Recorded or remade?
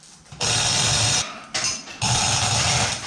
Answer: recorded